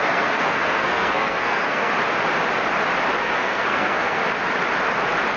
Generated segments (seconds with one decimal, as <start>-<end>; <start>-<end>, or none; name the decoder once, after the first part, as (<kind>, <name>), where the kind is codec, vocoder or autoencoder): 0.0-1.9 (codec, SNAC); 3.2-4.2